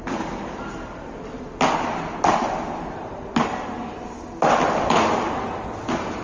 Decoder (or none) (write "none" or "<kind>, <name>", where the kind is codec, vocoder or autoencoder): none